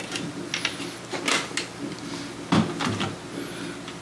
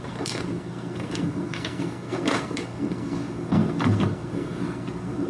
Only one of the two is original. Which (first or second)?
first